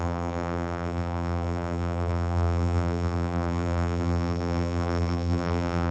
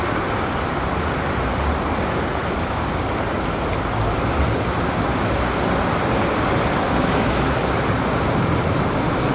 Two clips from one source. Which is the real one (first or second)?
second